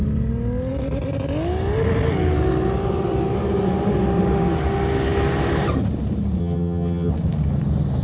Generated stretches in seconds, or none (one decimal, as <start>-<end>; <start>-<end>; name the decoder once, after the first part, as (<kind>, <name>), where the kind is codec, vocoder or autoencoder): 6.4-7.1 (vocoder, HiFi-GAN)